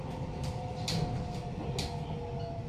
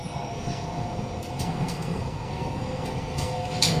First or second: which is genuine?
first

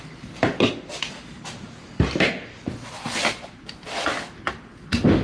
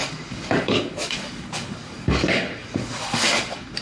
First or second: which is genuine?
first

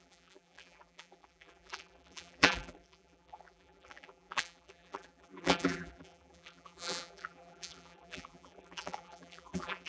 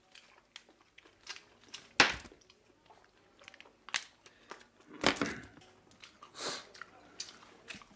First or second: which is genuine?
second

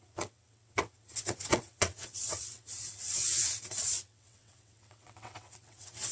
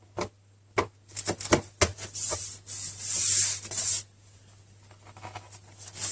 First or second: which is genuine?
second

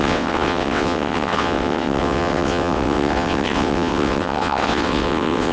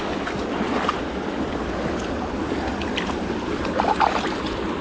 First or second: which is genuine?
second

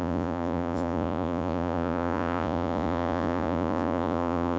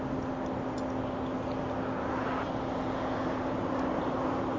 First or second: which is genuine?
second